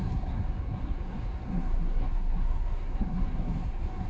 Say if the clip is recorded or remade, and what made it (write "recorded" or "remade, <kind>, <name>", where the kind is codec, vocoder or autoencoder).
remade, codec, SNAC